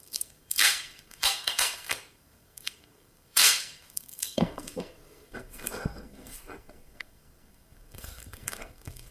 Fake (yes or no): yes